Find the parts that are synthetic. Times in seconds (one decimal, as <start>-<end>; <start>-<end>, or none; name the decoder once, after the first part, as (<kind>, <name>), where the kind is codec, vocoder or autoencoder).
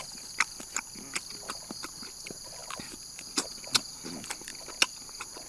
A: none